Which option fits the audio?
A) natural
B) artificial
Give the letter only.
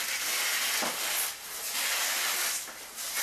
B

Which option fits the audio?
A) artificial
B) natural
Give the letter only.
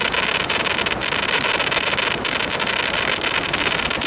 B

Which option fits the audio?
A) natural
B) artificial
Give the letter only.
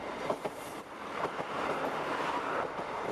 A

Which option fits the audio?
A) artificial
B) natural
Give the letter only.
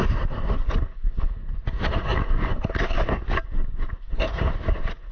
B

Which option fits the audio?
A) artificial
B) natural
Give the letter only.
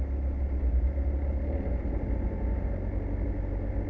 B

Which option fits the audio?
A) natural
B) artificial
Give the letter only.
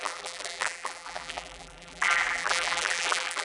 B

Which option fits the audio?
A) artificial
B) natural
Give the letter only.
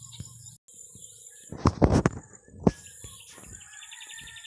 B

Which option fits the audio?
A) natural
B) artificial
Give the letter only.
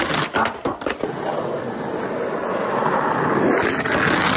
A